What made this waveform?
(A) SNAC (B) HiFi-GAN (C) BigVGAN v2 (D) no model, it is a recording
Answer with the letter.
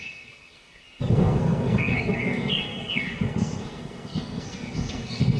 A